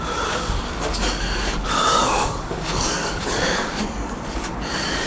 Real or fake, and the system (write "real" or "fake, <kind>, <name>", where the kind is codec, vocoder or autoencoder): fake, codec, DAC